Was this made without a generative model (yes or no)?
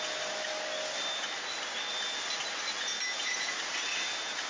yes